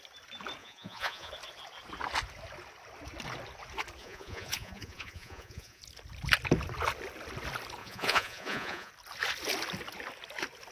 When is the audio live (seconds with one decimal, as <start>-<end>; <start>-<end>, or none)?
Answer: 0.0-0.6; 1.3-4.0; 5.8-7.8; 8.9-10.7